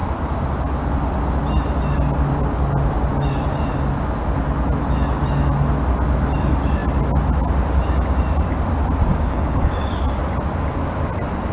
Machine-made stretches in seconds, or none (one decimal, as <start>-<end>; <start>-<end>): 9.1-9.9